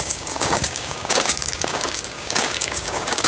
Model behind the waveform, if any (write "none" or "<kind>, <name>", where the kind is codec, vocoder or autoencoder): codec, DAC